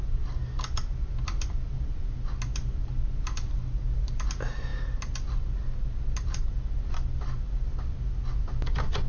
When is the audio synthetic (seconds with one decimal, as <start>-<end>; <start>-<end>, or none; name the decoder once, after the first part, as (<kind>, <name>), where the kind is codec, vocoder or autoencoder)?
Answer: none